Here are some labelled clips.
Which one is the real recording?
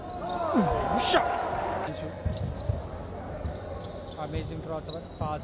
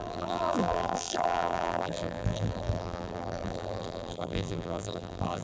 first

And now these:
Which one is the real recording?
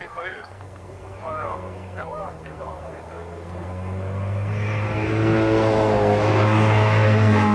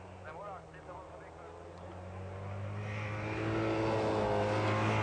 second